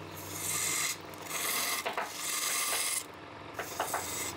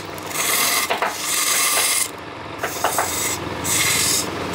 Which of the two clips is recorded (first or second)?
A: first